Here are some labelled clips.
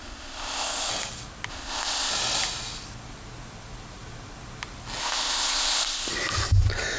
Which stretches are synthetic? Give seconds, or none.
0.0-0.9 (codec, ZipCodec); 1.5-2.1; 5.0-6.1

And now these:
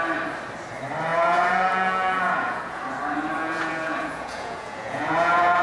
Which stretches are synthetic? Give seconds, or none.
1.1-2.8 (vocoder, Vocos); 3.4-5.6

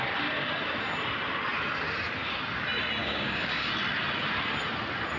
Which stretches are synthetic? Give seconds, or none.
3.0-3.7 (codec, DAC)

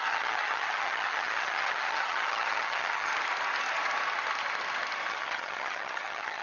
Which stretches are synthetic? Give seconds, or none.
0.0-3.1 (vocoder, HiFi-GAN); 5.1-6.4

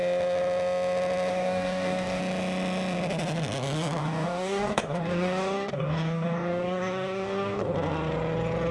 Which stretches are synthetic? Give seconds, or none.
1.3-2.2 (codec, DAC); 4.0-7.6

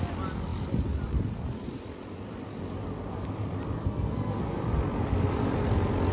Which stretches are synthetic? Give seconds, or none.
3.8-4.4 (codec, SNAC)

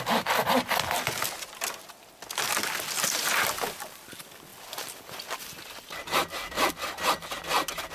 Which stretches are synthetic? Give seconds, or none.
none

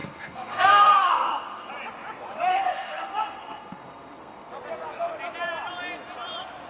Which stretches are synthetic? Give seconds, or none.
0.0-1.7 (codec, SNAC); 2.5-4.5